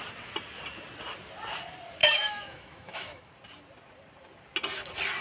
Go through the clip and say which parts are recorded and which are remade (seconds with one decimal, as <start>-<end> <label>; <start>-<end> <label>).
0.0-2.0 recorded; 2.0-3.3 remade; 3.3-5.2 recorded